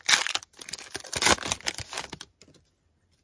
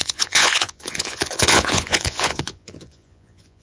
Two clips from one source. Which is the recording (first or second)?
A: first